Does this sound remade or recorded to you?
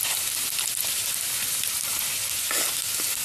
recorded